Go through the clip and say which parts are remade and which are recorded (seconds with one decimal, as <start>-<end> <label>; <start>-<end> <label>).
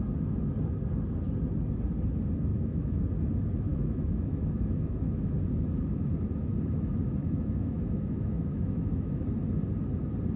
0.0-2.5 recorded; 2.5-3.0 remade; 3.0-3.7 recorded; 3.7-5.3 remade; 5.3-7.2 recorded; 7.2-9.3 remade; 9.3-10.4 recorded